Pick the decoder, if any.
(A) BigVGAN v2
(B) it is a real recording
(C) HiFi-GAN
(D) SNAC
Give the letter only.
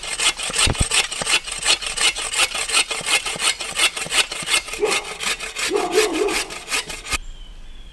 B